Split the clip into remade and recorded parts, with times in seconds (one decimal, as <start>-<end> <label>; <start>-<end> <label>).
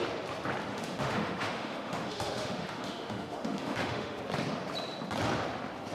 0.0-0.7 recorded; 0.7-4.2 remade; 4.2-5.9 recorded